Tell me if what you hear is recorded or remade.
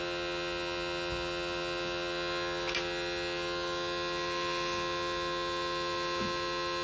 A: recorded